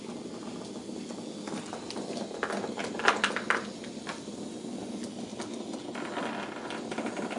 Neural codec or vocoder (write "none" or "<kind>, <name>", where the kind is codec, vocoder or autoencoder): none